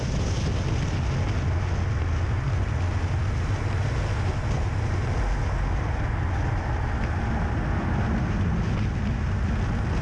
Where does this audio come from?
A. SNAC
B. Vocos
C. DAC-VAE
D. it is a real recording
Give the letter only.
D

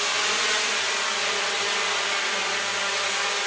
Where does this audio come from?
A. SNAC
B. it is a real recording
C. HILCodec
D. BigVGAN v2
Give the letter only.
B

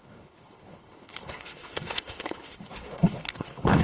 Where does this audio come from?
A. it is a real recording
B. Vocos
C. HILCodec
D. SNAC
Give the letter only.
C